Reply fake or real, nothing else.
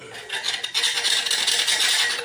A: real